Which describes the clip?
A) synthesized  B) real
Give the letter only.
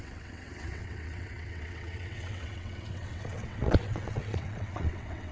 A